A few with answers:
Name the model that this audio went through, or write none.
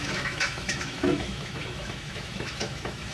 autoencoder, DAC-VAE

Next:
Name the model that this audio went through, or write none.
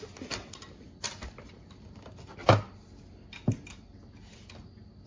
none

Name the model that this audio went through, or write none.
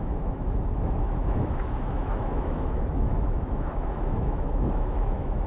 autoencoder, DAC-VAE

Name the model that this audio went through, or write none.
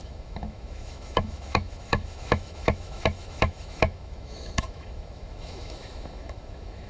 autoencoder, DAC-VAE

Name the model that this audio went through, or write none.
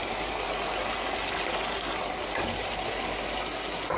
none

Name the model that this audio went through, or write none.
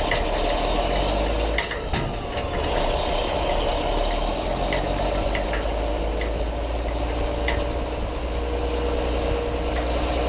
none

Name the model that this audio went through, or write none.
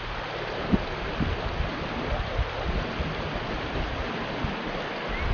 none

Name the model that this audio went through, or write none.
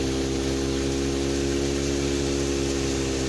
none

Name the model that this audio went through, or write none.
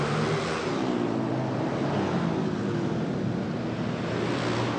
none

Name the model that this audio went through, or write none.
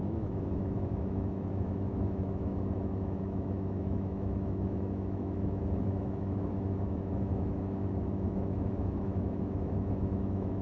autoencoder, DAC-VAE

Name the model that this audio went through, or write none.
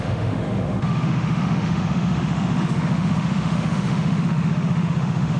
autoencoder, DAC-VAE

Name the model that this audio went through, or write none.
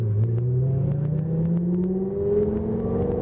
none